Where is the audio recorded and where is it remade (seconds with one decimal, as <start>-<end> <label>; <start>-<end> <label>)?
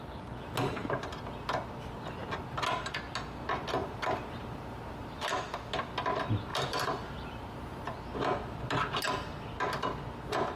0.0-3.8 recorded; 3.8-5.4 remade; 5.4-6.5 recorded; 6.5-7.7 remade; 7.7-10.6 recorded